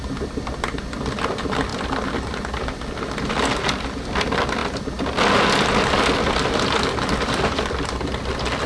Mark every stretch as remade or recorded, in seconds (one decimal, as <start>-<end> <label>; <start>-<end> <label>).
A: 0.0-8.7 recorded